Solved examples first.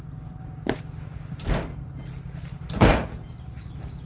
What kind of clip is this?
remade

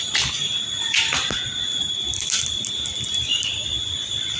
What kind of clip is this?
remade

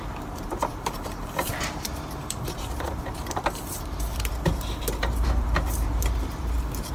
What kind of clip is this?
remade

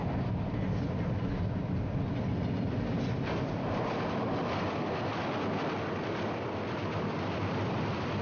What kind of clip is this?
recorded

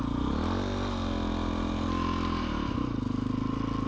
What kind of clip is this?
recorded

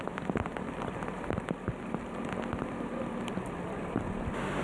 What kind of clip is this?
recorded